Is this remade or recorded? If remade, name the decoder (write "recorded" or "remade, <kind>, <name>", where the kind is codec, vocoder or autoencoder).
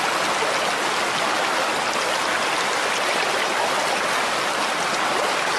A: recorded